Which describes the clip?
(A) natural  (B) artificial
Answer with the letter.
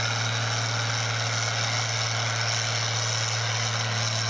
A